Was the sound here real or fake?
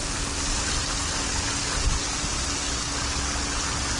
real